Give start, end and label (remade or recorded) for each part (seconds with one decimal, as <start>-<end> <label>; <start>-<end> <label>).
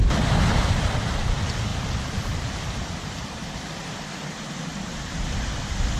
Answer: 0.0-1.7 recorded; 1.7-4.6 remade; 4.6-6.0 recorded